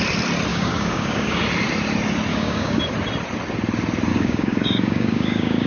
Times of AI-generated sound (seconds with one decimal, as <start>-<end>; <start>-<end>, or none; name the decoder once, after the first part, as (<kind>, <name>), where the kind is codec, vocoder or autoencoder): 0.5-1.4 (codec, DAC); 2.3-2.8; 4.1-5.7